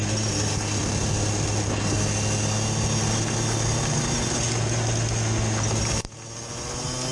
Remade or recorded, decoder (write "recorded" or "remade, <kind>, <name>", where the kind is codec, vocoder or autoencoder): recorded